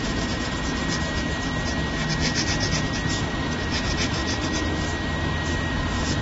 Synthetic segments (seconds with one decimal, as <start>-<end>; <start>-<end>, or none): 0.0-0.8; 3.2-4.2; 5.7-6.2